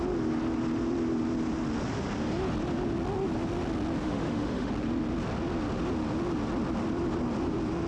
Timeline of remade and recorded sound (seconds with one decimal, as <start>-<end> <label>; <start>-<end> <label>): 0.0-4.0 recorded; 4.0-4.7 remade; 4.7-7.9 recorded